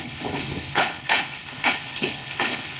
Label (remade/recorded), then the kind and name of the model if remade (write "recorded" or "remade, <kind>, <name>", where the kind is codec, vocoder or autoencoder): remade, codec, HILCodec